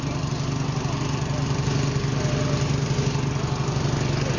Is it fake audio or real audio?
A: real